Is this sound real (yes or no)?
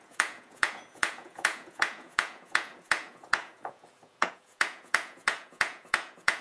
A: no